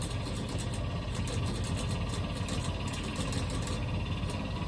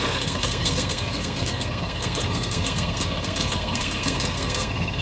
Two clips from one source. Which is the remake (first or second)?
second